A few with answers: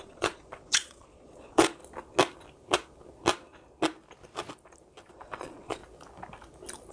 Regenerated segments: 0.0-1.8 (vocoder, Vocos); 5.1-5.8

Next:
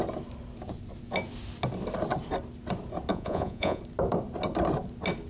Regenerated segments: 3.1-3.8 (vocoder, Vocos)

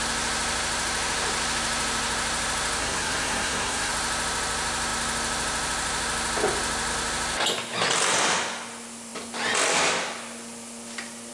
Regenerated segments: 2.8-3.9 (codec, SNAC)

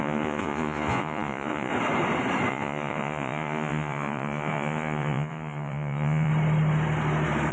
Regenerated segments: 0.0-1.7 (vocoder, Vocos); 2.5-6.3